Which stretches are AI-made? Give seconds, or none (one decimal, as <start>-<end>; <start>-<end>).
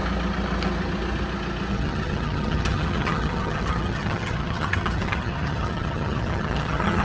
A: 1.7-7.0